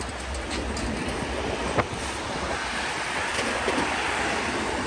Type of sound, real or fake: real